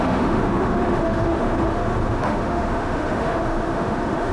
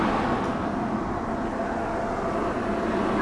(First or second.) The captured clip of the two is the second